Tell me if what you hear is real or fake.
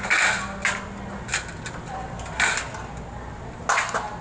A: real